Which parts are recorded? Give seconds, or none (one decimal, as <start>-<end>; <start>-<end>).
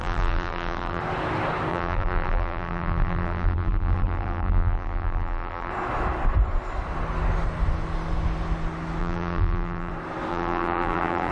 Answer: 1.0-1.7; 5.7-9.0; 9.9-10.3